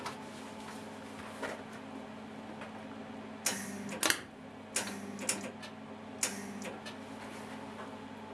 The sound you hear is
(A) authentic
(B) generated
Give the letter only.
A